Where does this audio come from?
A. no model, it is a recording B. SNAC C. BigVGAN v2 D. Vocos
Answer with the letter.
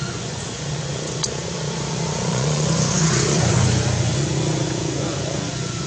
D